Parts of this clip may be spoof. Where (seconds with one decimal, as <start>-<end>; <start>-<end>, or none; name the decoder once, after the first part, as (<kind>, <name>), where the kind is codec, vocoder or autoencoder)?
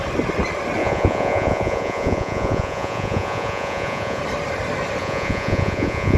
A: 0.8-4.2 (vocoder, Vocos); 5.0-6.2